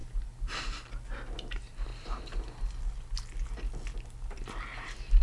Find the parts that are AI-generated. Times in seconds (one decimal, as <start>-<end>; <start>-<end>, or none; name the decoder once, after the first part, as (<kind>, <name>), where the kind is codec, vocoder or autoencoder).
0.0-0.6 (vocoder, BigVGAN v2); 1.9-2.8